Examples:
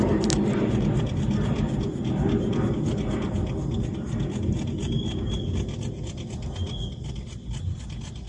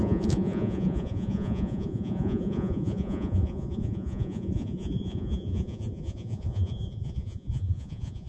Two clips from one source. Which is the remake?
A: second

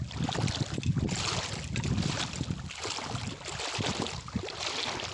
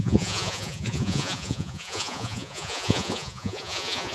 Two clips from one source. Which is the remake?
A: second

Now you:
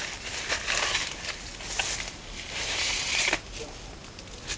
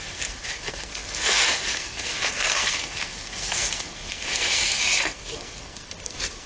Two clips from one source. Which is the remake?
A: second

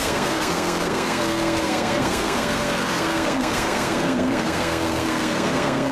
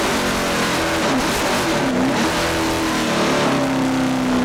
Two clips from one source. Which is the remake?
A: first